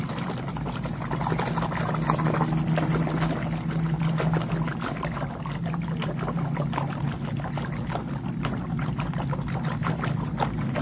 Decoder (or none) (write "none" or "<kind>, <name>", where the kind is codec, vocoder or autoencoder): none